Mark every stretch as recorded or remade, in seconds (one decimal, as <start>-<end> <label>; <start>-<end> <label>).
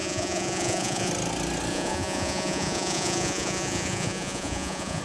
0.0-1.1 remade; 1.1-1.7 recorded; 1.7-5.0 remade